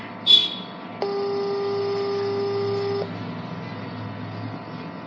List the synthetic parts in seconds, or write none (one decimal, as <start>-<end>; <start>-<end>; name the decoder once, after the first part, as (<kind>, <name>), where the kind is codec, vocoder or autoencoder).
none